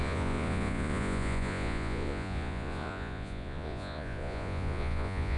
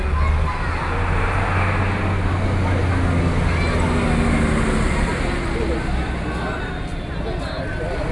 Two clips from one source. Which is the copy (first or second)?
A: first